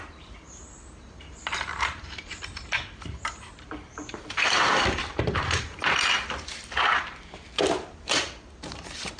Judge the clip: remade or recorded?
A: remade